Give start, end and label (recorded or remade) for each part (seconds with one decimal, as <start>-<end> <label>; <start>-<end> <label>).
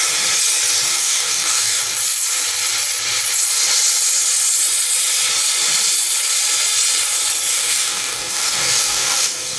0.0-0.9 recorded; 0.9-1.8 remade; 1.8-7.5 recorded; 7.5-9.6 remade